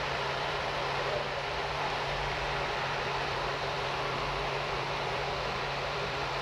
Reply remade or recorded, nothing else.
remade